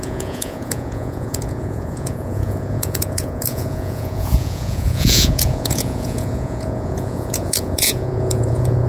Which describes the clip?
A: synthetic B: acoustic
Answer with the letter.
A